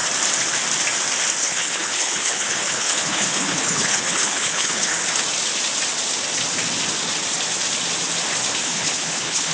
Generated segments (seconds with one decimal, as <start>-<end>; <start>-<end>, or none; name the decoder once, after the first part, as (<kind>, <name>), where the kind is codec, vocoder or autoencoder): 1.4-4.9 (codec, HILCodec); 8.6-9.5